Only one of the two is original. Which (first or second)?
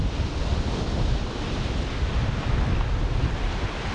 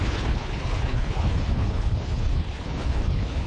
first